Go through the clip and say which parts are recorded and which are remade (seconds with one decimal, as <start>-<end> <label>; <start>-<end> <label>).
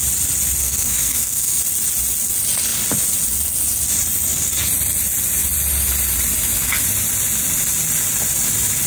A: 0.0-0.6 recorded; 0.6-1.6 remade; 1.6-8.9 recorded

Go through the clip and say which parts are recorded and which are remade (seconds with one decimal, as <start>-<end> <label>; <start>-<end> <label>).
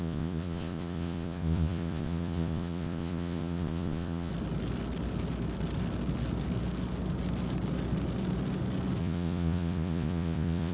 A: 0.0-4.3 remade; 4.3-9.0 recorded; 9.0-10.7 remade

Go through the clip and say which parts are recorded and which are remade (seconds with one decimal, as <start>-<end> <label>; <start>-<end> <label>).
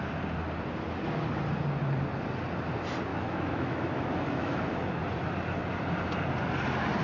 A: 0.0-3.1 recorded; 3.1-5.0 remade; 5.0-7.0 recorded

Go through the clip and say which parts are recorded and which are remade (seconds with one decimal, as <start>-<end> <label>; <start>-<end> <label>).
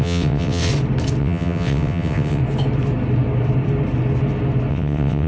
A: 0.0-0.7 remade; 0.7-1.2 recorded; 1.2-2.4 remade; 2.4-4.7 recorded; 4.7-5.3 remade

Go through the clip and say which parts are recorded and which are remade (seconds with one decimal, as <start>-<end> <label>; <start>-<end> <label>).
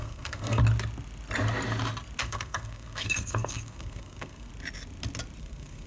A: 0.0-0.6 remade; 0.6-2.2 recorded; 2.2-4.5 remade; 4.5-5.4 recorded; 5.4-5.9 remade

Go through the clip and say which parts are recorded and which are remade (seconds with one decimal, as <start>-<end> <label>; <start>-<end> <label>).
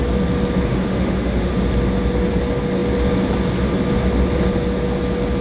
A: 0.0-0.7 recorded; 0.7-1.5 remade; 1.5-5.4 recorded